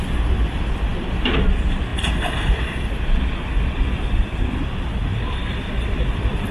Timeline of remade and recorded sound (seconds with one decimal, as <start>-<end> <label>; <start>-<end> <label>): 0.0-6.5 recorded